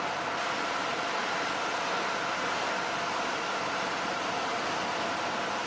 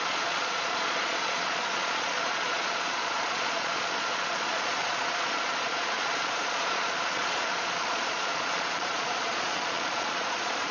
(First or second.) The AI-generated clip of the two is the second